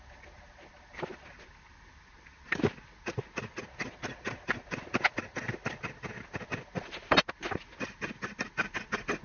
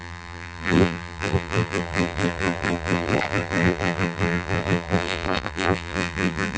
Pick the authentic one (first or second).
first